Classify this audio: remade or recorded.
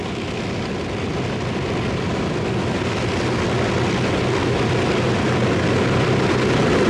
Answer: recorded